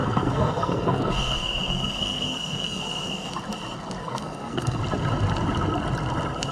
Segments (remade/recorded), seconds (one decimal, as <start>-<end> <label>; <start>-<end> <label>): 0.0-3.3 remade; 3.3-4.0 recorded; 4.0-4.8 remade; 4.8-6.5 recorded